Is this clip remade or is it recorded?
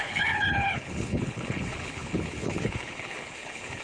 remade